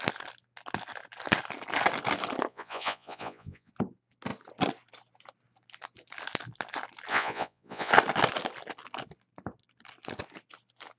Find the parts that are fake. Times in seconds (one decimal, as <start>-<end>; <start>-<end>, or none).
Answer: 2.5-3.7; 7.1-7.9